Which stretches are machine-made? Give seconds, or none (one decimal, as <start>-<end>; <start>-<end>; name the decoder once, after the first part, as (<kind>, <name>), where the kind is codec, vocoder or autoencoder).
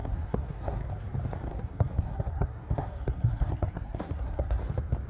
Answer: 0.0-0.9 (codec, SNAC); 1.5-4.6